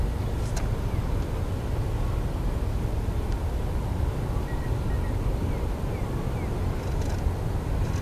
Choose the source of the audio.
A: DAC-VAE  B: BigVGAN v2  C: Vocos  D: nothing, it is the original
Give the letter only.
D